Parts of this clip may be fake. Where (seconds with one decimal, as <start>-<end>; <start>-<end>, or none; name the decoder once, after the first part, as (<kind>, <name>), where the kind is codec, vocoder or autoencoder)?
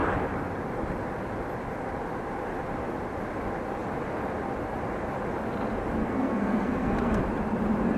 6.0-7.2 (codec, SNAC)